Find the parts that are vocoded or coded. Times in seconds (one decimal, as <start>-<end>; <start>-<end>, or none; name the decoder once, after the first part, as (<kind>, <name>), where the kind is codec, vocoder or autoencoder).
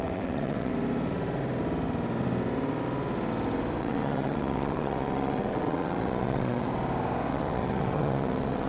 0.0-0.7 (vocoder, WaveNeXt); 3.8-6.7; 7.3-8.7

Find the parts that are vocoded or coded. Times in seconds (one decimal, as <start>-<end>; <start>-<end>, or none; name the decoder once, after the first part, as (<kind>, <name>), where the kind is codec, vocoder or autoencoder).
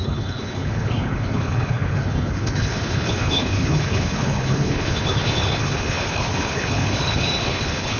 0.0-8.0 (codec, HILCodec)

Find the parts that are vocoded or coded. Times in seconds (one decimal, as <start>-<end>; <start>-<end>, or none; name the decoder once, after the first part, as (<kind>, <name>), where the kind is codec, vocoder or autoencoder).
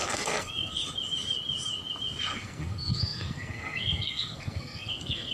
0.0-0.8 (codec, SNAC); 2.3-5.3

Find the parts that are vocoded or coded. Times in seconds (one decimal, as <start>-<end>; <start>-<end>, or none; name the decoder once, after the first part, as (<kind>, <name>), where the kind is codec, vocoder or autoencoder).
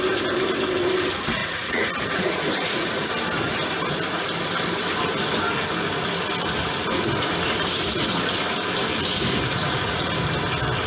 1.4-3.1 (vocoder, Vocos); 9.6-10.1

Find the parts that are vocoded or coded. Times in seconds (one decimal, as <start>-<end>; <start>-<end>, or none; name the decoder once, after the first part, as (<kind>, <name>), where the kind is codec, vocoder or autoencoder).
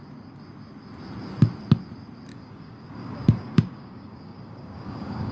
2.3-5.3 (codec, DAC)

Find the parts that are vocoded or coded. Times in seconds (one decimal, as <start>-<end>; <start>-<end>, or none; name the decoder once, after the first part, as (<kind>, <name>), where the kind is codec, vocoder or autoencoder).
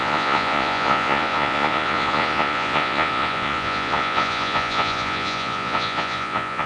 0.0-6.7 (vocoder, Vocos)